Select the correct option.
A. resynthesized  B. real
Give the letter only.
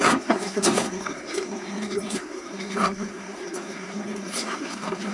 A